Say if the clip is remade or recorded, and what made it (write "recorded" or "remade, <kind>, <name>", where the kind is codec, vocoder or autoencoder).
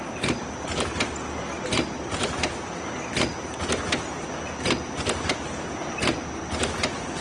recorded